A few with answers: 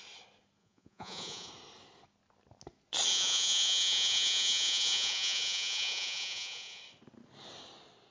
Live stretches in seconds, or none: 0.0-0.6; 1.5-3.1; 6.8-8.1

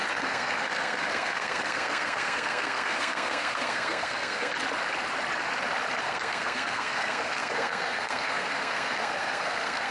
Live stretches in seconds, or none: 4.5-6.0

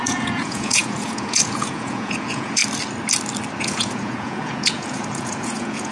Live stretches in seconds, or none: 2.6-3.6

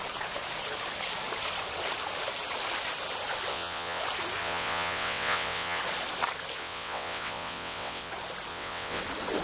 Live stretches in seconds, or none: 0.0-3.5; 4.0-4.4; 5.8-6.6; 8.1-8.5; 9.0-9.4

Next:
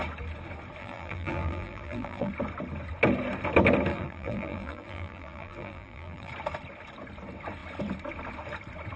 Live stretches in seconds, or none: 0.0-0.8; 2.3-3.9; 6.3-9.0

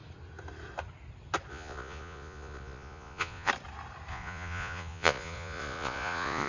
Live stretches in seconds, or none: 0.0-1.5; 3.5-4.1